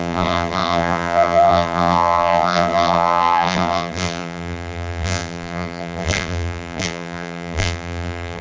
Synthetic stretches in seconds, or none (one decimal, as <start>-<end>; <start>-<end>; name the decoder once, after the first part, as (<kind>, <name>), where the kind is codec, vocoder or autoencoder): 0.0-8.4 (vocoder, BigVGAN v2)

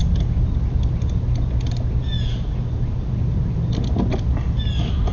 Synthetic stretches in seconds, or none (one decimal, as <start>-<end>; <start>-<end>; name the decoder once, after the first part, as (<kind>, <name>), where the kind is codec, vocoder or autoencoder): none

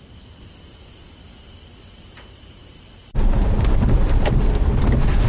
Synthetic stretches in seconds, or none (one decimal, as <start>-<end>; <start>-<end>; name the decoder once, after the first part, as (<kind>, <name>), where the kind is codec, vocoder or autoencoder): none